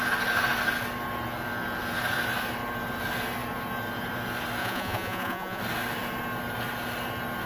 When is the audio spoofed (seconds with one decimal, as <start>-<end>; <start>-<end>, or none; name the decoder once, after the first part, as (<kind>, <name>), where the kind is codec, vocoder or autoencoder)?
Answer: 4.6-5.6 (vocoder, Vocos)